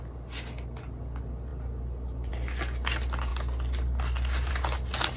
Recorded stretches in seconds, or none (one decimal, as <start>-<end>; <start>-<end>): 0.0-5.2